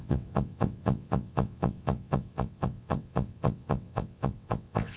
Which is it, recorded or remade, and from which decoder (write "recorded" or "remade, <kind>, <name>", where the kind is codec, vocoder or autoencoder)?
remade, vocoder, WaveNeXt